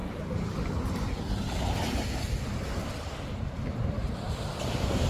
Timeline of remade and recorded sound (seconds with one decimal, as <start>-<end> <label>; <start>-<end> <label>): 0.0-1.0 remade; 1.0-2.8 recorded; 2.8-4.2 remade; 4.2-5.1 recorded